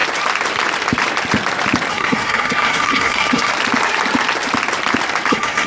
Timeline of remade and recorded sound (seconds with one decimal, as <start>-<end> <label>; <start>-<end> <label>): 0.0-1.9 recorded; 1.9-3.5 remade; 3.5-5.3 recorded; 5.3-5.7 remade